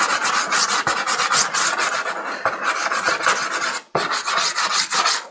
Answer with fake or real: real